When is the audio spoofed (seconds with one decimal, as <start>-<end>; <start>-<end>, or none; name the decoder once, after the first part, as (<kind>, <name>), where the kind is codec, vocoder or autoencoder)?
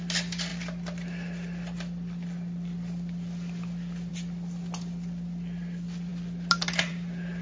none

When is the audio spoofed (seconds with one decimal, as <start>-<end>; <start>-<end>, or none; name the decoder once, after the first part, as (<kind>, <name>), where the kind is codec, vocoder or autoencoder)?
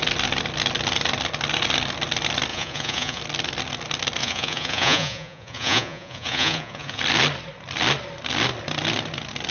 2.5-3.2 (vocoder, Vocos); 4.2-7.0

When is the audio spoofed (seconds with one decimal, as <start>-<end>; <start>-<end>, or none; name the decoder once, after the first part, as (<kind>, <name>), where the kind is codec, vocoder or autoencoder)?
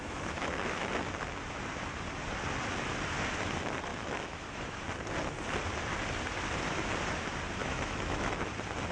0.0-0.9 (autoencoder, DAC-VAE); 3.9-4.8; 7.6-8.5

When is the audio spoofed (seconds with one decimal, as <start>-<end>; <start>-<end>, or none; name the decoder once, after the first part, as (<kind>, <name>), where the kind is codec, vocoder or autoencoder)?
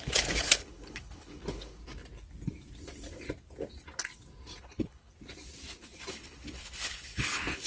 0.0-1.8 (codec, HILCodec); 4.6-5.1; 6.1-7.7